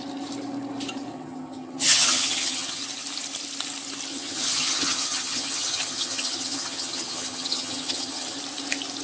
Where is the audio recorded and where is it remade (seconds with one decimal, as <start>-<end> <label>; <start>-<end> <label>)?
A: 0.0-1.1 recorded; 1.1-2.8 remade; 2.8-4.1 recorded; 4.1-8.4 remade; 8.4-9.0 recorded